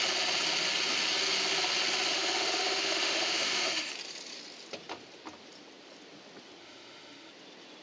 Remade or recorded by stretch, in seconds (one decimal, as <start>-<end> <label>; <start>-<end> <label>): 0.0-2.1 recorded; 2.1-3.9 remade; 3.9-6.6 recorded; 6.6-7.3 remade; 7.3-7.8 recorded